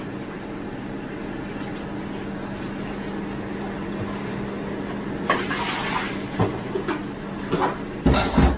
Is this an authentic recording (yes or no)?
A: yes